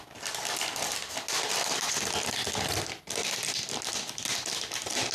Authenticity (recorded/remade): recorded